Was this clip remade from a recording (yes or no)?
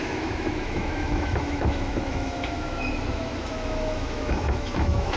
yes